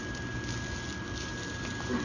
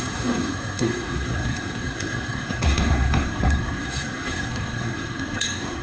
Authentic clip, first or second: first